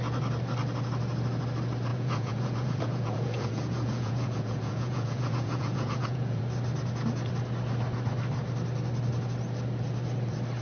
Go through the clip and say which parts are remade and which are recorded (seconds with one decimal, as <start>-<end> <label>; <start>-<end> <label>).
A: 0.0-1.9 recorded; 1.9-6.4 remade; 6.4-10.6 recorded